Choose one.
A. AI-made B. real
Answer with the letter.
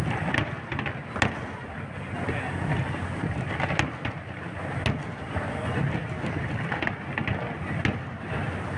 B